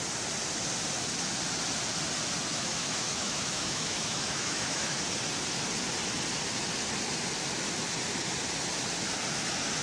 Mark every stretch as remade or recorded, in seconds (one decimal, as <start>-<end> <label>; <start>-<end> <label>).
0.0-2.5 recorded; 2.5-5.0 remade; 5.0-9.8 recorded